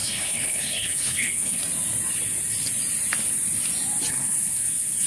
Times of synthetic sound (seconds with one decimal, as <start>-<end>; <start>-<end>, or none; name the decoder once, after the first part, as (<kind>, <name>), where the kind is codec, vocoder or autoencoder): 0.0-1.6 (codec, HILCodec); 4.1-5.1